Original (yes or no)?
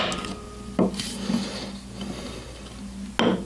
yes